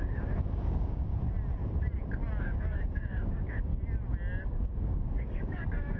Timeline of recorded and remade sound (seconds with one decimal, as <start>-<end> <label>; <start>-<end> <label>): 0.0-1.1 remade; 1.1-2.4 recorded; 2.4-3.7 remade; 3.7-4.4 recorded; 4.4-6.0 remade